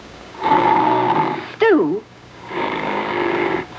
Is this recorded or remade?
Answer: remade